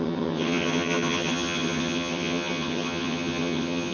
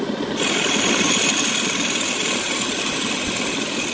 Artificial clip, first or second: first